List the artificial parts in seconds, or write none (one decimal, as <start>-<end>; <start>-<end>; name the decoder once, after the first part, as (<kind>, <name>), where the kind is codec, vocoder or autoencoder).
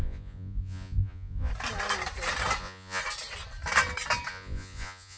0.0-1.5 (vocoder, Vocos); 2.6-3.0; 4.3-5.2